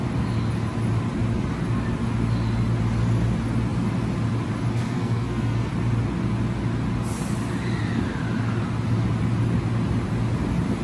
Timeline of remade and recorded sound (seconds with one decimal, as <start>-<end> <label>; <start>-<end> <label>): 0.0-4.8 recorded; 4.8-5.7 remade; 5.7-10.8 recorded